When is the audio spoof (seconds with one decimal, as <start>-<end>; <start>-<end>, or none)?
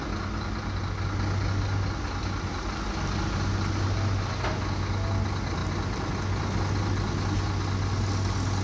none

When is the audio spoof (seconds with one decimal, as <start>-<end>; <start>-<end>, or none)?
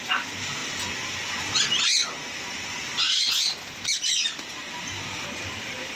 none